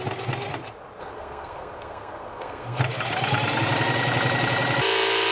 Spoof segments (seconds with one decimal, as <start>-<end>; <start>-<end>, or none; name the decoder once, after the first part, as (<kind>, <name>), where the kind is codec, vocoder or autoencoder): 1.0-2.8 (codec, SNAC)